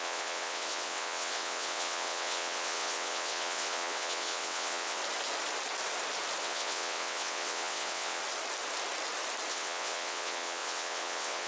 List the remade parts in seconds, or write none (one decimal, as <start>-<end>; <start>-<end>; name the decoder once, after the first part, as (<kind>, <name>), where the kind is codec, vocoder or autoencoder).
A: 0.0-5.0 (vocoder, WaveNeXt); 6.4-8.2; 9.5-11.5